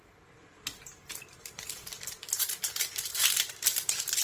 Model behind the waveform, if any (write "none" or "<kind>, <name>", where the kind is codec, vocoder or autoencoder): vocoder, BigVGAN v2